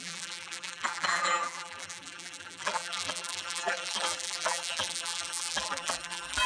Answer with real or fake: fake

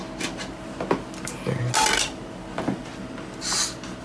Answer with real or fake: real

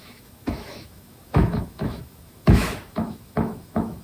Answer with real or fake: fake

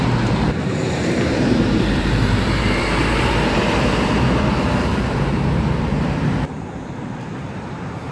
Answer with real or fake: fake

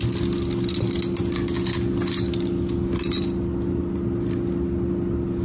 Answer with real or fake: real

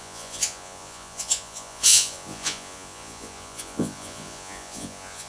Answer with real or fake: fake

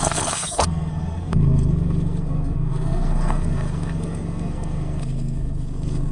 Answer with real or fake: fake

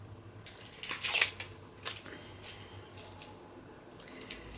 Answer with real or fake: real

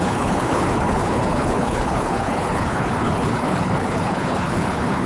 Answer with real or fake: fake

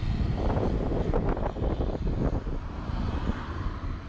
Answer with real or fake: real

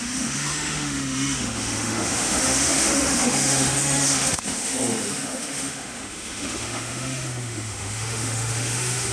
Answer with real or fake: fake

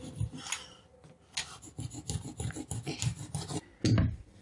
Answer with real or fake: real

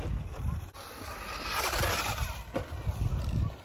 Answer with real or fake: fake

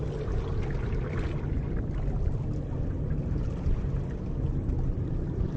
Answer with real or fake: real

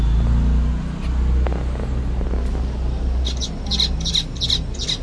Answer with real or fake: real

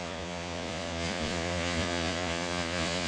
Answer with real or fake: fake